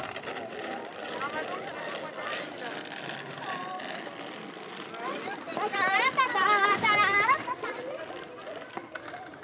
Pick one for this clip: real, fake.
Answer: real